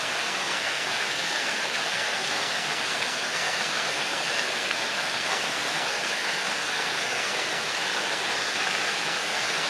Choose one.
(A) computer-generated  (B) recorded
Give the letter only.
A